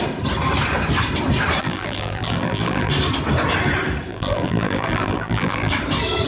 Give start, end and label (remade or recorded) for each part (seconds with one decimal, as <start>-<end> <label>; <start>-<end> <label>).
0.0-1.6 recorded; 1.6-2.9 remade; 2.9-4.1 recorded; 4.1-5.7 remade; 5.7-6.3 recorded